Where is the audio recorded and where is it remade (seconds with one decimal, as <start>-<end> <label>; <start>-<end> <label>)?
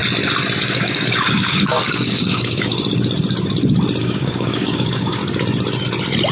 0.0-0.6 recorded; 0.6-2.7 remade; 2.7-4.0 recorded; 4.0-5.2 remade; 5.2-6.3 recorded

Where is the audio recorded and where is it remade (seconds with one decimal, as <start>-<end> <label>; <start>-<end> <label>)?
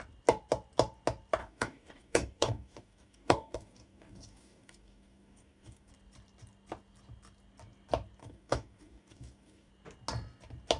0.0-1.4 recorded; 1.4-5.9 remade; 5.9-8.2 recorded; 8.2-9.7 remade; 9.7-10.8 recorded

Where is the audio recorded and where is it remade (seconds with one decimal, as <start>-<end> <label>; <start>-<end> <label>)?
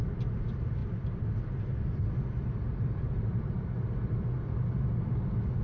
0.0-5.6 recorded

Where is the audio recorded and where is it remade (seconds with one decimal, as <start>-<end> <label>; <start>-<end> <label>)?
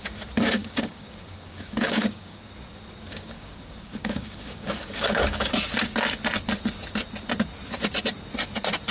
0.0-0.6 recorded; 0.6-2.4 remade; 2.4-3.1 recorded; 3.1-5.5 remade; 5.5-8.9 recorded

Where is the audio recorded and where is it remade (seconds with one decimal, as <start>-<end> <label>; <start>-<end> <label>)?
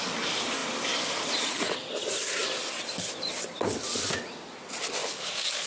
0.0-5.0 recorded; 5.0-5.7 remade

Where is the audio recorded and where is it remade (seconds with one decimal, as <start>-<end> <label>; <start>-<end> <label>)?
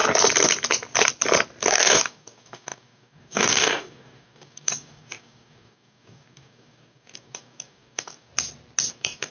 0.0-1.7 recorded; 1.7-8.3 remade; 8.3-8.9 recorded; 8.9-9.3 remade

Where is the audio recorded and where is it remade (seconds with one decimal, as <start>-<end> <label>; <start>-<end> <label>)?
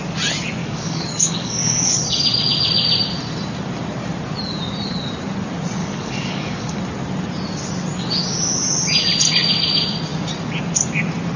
0.0-0.6 recorded; 0.6-2.4 remade; 2.4-5.8 recorded; 5.8-6.8 remade; 6.8-11.4 recorded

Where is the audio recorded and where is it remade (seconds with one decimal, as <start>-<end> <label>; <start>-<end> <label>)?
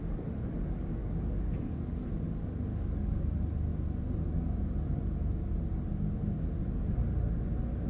0.0-1.0 recorded; 1.0-2.1 remade; 2.1-2.7 recorded; 2.7-3.3 remade; 3.3-7.9 recorded